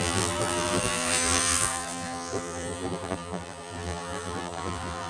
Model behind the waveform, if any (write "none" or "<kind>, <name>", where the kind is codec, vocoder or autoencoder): vocoder, BigVGAN v2